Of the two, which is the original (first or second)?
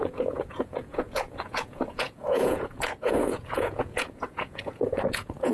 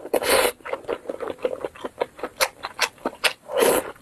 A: second